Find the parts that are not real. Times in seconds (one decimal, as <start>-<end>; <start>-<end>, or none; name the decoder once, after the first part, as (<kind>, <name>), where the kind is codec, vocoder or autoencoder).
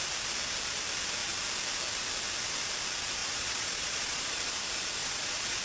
3.2-4.5 (vocoder, Vocos); 5.0-5.6